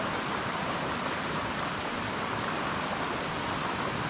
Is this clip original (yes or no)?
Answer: yes